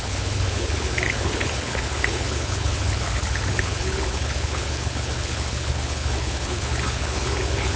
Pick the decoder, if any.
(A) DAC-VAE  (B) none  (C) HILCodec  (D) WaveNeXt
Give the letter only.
C